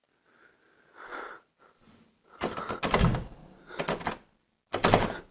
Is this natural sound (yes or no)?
yes